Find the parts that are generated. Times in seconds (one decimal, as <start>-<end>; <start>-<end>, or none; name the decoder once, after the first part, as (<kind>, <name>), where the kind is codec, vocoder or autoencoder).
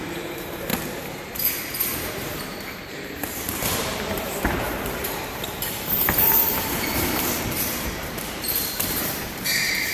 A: 0.0-0.7 (vocoder, BigVGAN v2); 1.3-3.2; 3.9-9.9